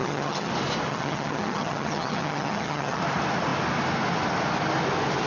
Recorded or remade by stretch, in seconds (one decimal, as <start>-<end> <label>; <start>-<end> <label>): 0.0-0.5 remade; 0.5-0.9 recorded; 0.9-3.0 remade; 3.0-5.3 recorded